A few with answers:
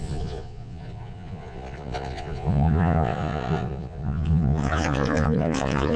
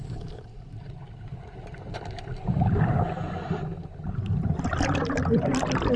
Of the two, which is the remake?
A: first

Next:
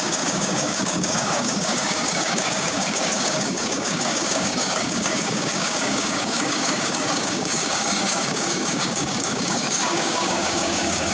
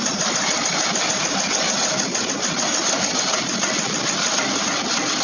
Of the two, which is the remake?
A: first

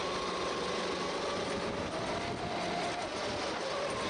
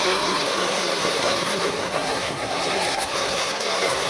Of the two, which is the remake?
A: second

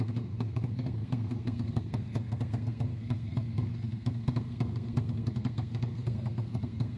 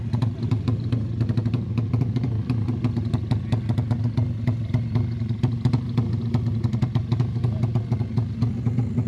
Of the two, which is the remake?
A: first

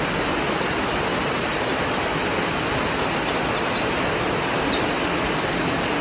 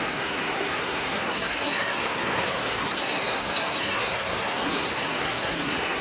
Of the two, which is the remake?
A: second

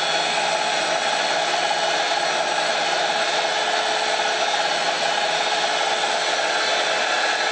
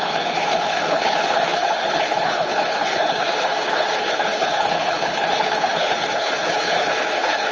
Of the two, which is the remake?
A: second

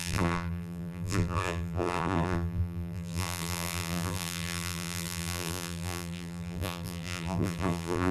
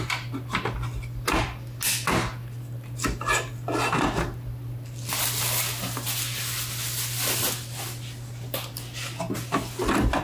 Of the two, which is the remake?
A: first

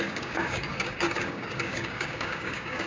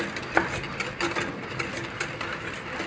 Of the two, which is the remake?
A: first